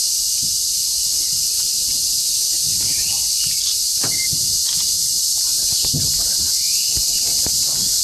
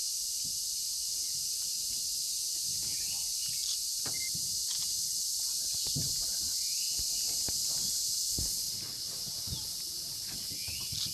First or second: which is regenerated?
first